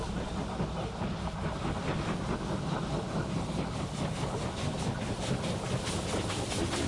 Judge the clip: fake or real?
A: real